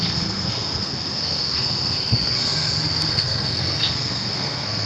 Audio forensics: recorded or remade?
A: remade